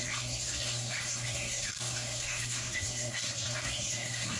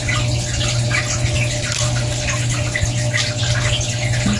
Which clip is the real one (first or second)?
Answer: second